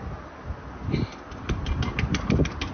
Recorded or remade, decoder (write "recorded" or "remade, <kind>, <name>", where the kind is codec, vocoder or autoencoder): recorded